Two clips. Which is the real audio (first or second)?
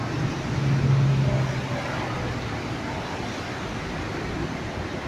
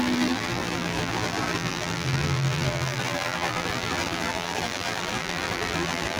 first